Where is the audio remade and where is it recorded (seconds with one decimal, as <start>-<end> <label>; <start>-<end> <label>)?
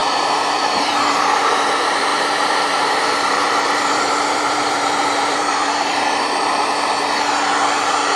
0.0-1.5 remade; 1.5-2.1 recorded; 2.1-7.0 remade; 7.0-8.2 recorded